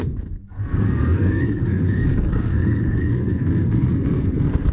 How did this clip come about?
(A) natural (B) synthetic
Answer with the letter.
B